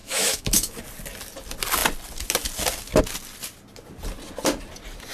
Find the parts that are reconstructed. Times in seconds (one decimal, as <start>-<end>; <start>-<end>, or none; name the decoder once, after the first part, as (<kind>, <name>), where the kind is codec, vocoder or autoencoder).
0.0-0.8 (autoencoder, DAC-VAE)